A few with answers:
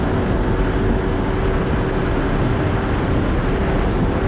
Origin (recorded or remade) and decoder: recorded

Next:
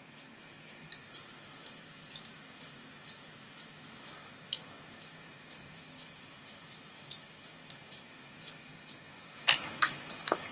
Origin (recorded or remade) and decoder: remade, autoencoder, DAC-VAE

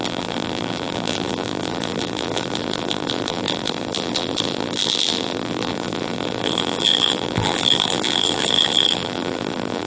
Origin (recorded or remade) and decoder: remade, vocoder, BigVGAN v2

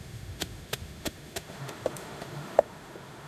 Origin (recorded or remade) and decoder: remade, autoencoder, DAC-VAE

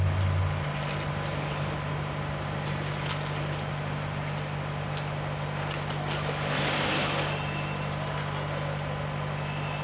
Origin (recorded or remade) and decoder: recorded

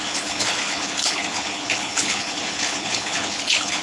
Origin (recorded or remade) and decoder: remade, codec, HILCodec